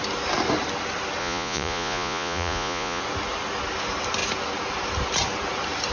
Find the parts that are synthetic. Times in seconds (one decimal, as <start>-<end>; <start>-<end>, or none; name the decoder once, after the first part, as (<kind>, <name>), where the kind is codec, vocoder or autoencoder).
1.2-3.0 (vocoder, Vocos)